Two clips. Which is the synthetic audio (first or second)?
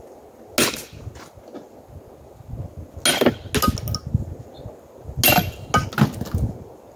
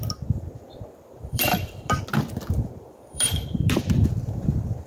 second